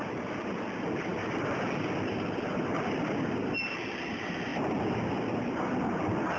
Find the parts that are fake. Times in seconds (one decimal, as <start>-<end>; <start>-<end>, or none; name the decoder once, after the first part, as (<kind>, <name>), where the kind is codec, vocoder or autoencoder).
0.0-4.5 (vocoder, BigVGAN v2); 5.4-6.4